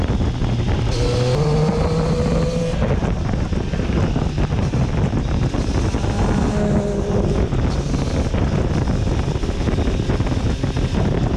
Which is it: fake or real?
real